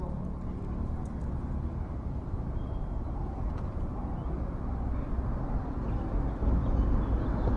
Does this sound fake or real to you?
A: real